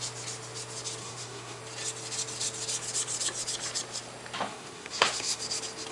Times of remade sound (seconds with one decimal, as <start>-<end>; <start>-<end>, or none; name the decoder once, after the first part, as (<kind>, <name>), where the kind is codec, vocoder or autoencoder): 1.0-1.6 (codec, SNAC); 4.5-5.4